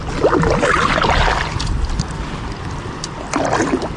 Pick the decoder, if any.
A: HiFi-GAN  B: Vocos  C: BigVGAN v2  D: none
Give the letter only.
D